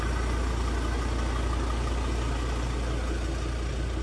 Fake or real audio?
real